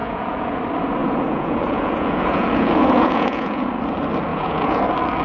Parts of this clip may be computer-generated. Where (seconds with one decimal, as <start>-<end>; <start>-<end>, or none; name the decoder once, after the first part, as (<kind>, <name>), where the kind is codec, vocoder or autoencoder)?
0.0-0.6 (vocoder, Vocos); 1.0-3.7; 4.3-4.8